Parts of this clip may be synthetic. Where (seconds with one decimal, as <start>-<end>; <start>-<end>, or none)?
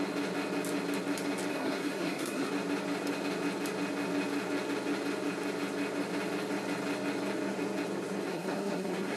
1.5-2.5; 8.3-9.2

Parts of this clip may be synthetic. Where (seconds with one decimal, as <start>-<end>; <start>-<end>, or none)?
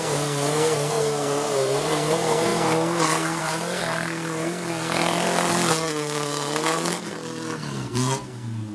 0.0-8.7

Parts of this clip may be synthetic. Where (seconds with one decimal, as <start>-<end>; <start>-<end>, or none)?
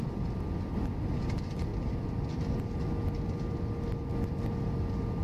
none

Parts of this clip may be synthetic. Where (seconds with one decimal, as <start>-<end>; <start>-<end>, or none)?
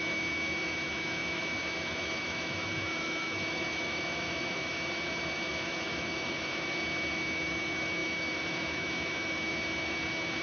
0.0-10.4